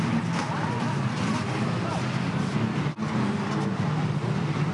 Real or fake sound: real